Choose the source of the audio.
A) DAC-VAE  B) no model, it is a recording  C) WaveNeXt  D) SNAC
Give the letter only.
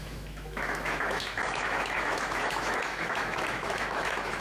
A